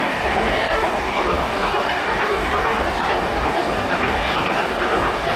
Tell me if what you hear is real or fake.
fake